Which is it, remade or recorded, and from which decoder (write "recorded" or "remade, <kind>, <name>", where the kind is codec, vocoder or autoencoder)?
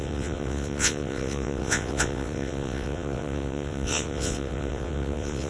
remade, vocoder, WaveNeXt